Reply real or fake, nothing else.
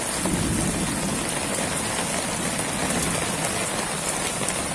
real